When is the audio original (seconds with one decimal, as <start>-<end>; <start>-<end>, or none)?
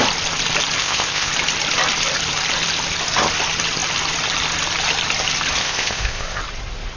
0.0-0.8; 1.3-5.6; 6.4-7.0